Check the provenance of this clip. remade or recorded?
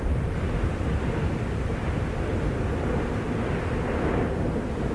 recorded